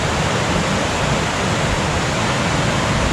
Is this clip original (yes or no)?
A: yes